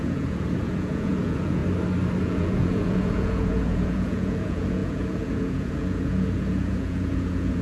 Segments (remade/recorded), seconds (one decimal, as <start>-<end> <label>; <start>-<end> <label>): 0.0-1.6 remade; 1.6-2.2 recorded; 2.2-7.6 remade